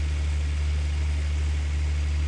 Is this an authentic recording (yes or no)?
yes